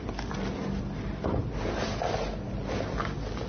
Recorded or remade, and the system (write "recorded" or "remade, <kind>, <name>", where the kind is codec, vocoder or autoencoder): recorded